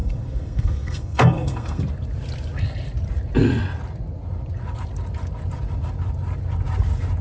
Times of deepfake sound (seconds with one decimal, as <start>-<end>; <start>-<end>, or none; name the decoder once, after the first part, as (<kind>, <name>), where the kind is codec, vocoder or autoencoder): 0.0-1.8 (codec, SNAC)